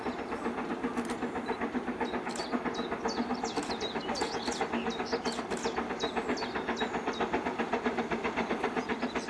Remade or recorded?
recorded